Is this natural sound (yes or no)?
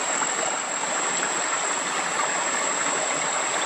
yes